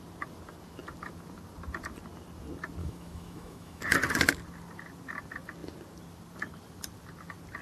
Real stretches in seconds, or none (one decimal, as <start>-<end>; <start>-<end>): 0.0-2.8; 3.8-7.6